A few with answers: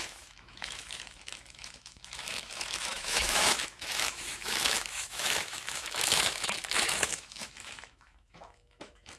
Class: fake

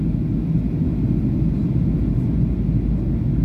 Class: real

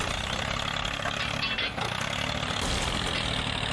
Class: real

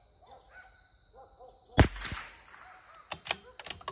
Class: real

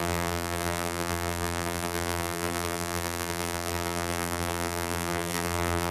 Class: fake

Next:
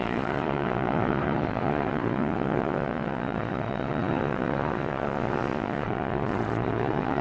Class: fake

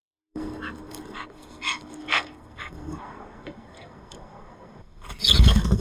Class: fake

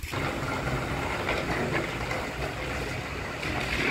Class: real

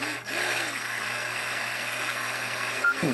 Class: fake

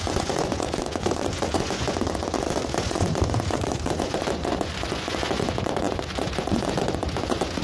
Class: fake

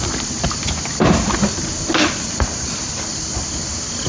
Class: real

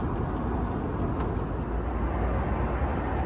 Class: real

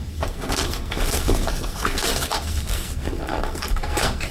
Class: fake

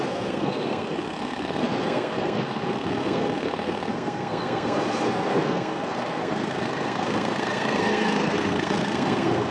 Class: fake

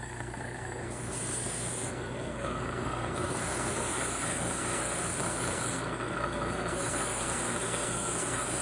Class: fake